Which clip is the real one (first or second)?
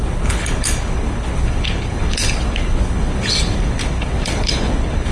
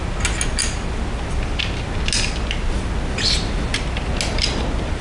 second